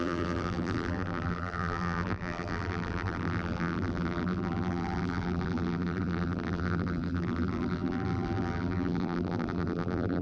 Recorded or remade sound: remade